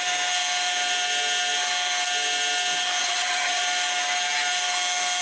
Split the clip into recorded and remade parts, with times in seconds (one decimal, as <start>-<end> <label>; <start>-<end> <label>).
0.0-3.0 recorded; 3.0-3.6 remade; 3.6-5.2 recorded